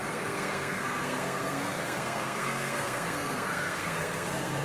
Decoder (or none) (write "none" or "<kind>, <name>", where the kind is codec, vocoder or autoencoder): codec, SNAC